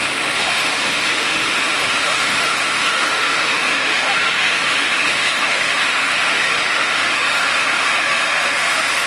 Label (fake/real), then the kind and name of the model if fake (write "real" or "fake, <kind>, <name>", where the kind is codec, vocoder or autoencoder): fake, autoencoder, DAC-VAE